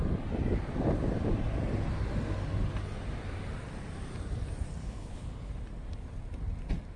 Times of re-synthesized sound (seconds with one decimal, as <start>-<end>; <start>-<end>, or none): 4.8-5.5